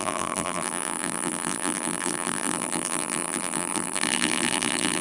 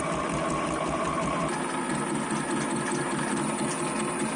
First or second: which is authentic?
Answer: second